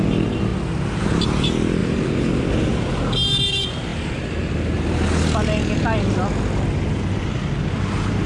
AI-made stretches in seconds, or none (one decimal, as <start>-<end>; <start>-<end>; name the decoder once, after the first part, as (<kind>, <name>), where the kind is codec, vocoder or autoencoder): 1.8-2.4 (vocoder, BigVGAN v2); 3.9-4.5

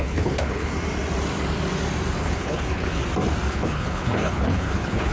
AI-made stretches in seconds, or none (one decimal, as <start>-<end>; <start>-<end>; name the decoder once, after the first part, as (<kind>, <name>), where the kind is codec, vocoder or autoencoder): 0.0-0.7 (codec, HILCodec); 2.2-3.0; 3.5-5.1